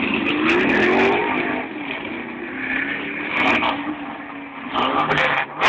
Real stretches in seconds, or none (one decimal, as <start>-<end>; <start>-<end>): 0.0-5.7